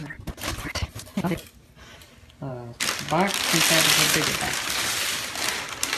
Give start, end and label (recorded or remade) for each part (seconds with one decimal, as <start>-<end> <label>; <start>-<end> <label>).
0.0-6.0 recorded